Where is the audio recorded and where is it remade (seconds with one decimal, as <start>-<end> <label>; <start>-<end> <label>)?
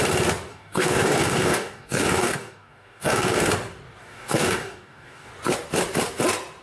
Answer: 0.0-0.5 recorded; 0.5-3.5 remade; 3.5-4.0 recorded; 4.0-5.3 remade; 5.3-6.6 recorded